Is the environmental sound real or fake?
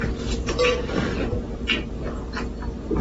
real